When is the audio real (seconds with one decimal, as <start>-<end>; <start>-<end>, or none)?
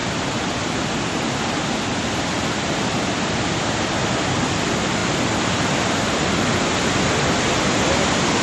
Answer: 1.5-5.0; 5.7-8.4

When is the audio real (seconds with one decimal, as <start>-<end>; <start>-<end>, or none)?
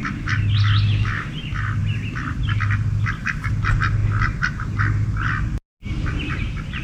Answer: 0.0-6.8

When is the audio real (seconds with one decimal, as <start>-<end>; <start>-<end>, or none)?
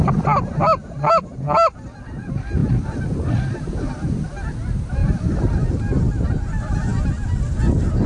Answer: 0.0-5.0; 6.0-8.1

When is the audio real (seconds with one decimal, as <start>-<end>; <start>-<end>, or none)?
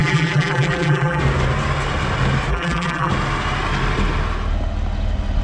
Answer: 1.2-2.5; 3.1-5.4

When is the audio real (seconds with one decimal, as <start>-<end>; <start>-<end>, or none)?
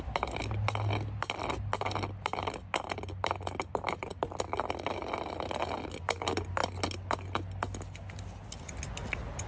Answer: 0.0-9.5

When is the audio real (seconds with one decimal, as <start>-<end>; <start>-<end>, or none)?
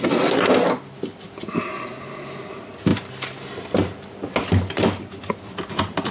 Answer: 0.0-6.1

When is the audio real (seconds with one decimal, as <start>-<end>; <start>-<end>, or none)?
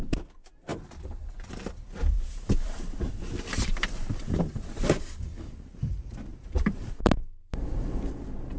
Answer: 0.0-2.1; 4.8-6.3; 7.1-8.6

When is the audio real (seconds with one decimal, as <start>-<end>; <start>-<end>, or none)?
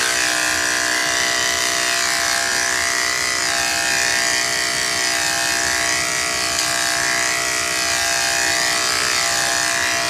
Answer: 0.0-10.1